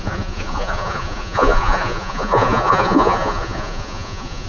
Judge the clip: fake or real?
fake